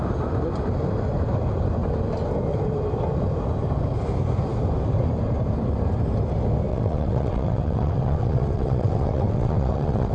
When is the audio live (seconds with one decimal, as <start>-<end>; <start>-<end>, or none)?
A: 0.0-6.7